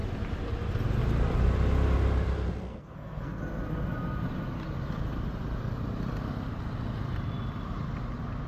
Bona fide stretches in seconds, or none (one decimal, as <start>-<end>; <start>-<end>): 0.0-2.7; 3.4-8.5